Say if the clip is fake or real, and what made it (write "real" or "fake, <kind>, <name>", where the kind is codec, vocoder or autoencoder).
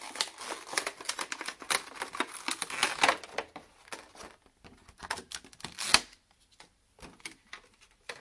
real